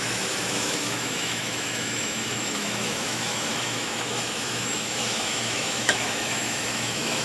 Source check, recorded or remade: remade